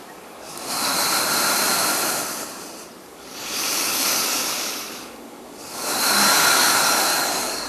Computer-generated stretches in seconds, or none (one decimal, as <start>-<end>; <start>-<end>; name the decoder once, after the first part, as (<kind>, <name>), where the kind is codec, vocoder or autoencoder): 0.0-0.9 (codec, DAC); 3.0-7.7